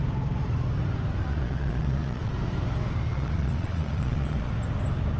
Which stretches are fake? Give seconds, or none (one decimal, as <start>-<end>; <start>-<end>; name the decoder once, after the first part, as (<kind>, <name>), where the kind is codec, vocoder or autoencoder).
1.2-2.3 (vocoder, Vocos); 3.1-4.5

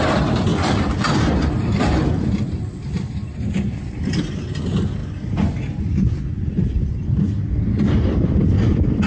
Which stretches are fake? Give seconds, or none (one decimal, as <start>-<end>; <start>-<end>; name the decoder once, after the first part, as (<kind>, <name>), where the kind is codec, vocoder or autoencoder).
0.5-4.2 (vocoder, BigVGAN v2); 6.3-9.1

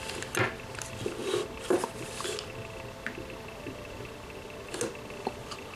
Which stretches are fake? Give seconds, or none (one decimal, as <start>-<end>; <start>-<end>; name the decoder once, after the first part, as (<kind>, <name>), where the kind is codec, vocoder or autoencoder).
none